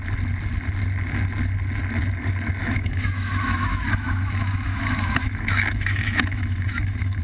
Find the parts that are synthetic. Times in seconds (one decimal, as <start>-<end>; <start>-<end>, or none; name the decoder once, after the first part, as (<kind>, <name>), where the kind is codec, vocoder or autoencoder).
2.6-7.2 (autoencoder, DAC-VAE)